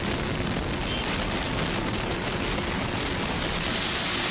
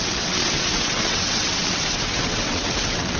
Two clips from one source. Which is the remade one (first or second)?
second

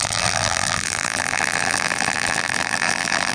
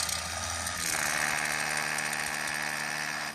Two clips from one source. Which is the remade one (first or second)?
first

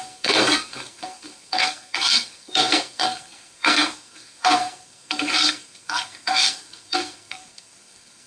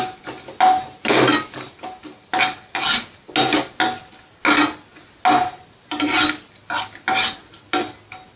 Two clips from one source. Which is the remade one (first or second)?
first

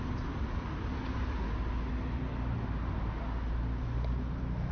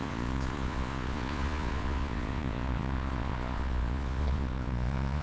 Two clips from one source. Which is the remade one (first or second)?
second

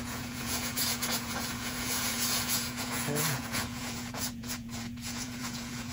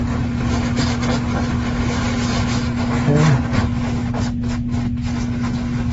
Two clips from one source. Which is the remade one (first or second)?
first